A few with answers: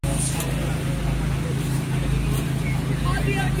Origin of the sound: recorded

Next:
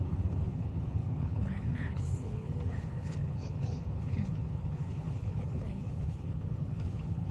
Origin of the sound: remade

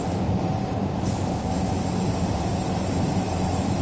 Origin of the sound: recorded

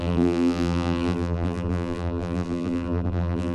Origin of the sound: remade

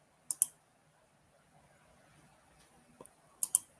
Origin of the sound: recorded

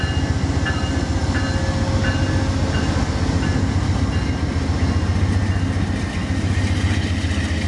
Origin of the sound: recorded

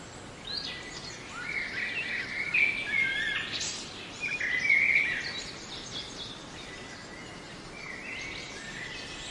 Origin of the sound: recorded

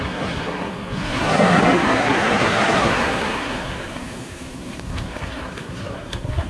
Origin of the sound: remade